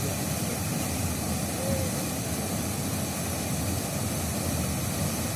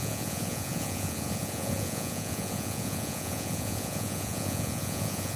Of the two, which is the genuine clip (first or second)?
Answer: first